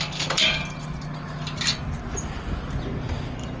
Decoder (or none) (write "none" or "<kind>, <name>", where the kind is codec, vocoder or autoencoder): none